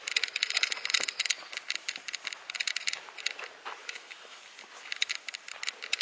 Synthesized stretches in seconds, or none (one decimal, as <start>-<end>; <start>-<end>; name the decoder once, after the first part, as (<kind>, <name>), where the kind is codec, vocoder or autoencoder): 3.8-4.4 (autoencoder, DAC-VAE)